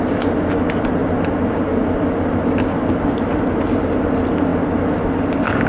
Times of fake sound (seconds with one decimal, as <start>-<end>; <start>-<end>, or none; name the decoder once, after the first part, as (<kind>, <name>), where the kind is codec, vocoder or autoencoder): none